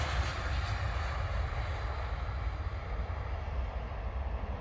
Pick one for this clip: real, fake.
real